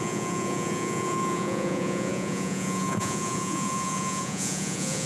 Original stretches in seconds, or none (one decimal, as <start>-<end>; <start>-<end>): none